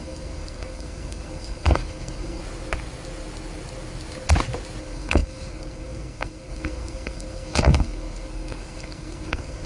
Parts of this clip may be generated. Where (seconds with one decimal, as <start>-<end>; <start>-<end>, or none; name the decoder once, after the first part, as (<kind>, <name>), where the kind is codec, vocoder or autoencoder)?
0.0-2.4 (codec, SNAC); 4.8-9.7